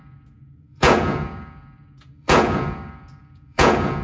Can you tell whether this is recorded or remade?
remade